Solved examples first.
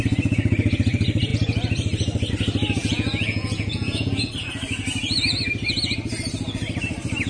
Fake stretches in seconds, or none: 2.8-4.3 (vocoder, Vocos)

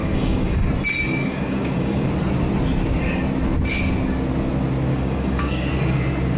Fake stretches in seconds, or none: 0.0-0.7 (codec, DAC); 1.2-2.1; 4.9-5.7

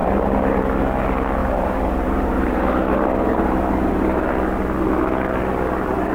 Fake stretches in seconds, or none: 0.0-0.6 (vocoder, BigVGAN v2); 1.4-4.2

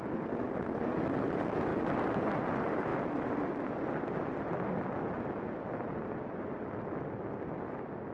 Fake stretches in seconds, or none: none